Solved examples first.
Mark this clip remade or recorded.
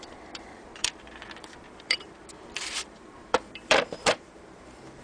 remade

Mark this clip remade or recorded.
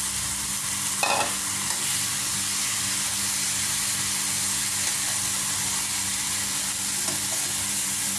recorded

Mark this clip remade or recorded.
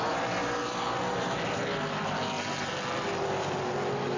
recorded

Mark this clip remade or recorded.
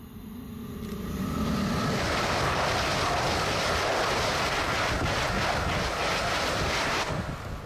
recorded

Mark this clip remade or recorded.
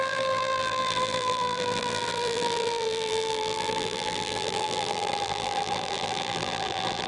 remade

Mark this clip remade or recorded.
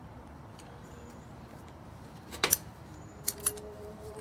remade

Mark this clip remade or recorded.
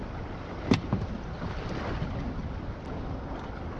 recorded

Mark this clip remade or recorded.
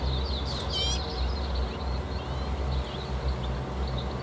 recorded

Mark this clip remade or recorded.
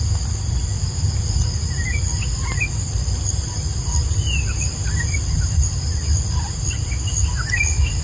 recorded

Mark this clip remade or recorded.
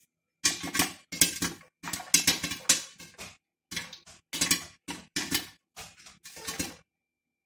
recorded